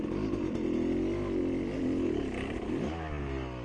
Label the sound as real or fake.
real